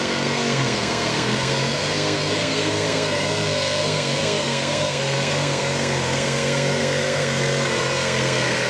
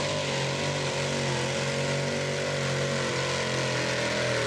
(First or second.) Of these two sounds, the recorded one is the second